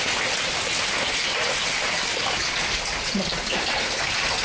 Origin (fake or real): real